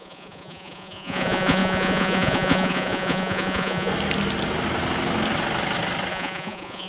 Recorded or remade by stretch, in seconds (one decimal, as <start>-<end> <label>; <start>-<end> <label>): 0.0-3.9 remade; 3.9-6.1 recorded; 6.1-6.9 remade